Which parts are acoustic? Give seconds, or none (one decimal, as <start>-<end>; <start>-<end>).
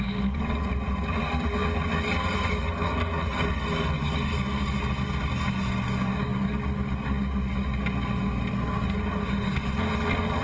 0.0-10.4